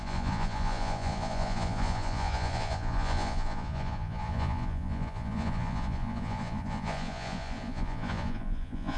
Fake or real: fake